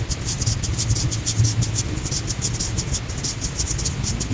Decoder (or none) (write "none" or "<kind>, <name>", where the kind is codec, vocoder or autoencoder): none